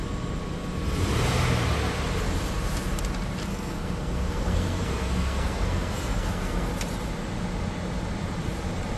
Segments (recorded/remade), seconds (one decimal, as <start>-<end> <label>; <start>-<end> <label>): 0.0-3.5 recorded; 3.5-6.7 remade; 6.7-9.0 recorded